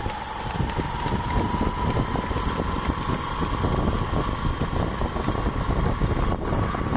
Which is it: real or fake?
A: real